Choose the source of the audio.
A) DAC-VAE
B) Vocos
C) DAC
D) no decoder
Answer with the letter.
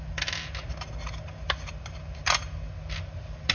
D